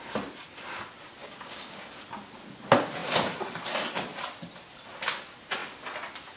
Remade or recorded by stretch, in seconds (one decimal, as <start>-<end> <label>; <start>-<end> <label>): 0.0-1.2 recorded; 1.2-1.9 remade; 1.9-6.4 recorded